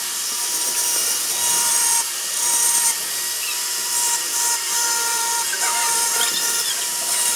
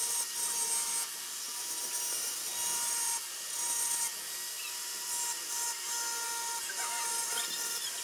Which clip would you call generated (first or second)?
first